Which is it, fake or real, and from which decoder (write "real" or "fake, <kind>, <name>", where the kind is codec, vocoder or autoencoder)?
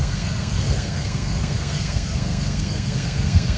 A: fake, codec, SNAC